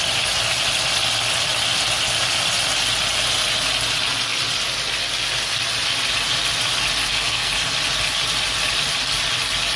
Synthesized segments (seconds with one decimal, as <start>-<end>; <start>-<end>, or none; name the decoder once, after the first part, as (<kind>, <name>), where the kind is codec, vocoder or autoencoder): 7.0-7.5 (codec, SNAC)